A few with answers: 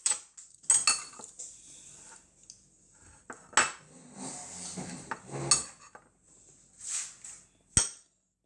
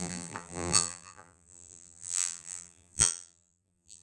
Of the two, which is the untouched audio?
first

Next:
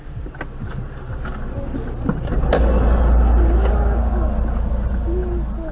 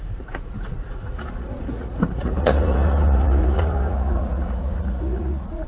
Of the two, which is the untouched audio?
first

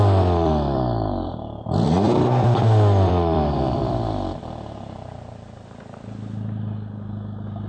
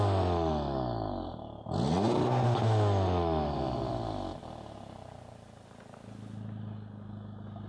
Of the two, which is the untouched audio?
second